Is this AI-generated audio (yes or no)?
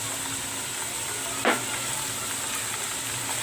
no